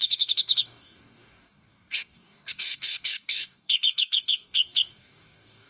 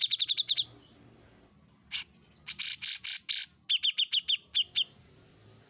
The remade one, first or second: first